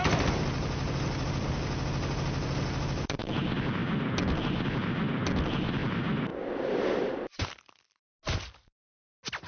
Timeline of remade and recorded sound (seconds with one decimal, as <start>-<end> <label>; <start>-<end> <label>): 0.0-9.5 recorded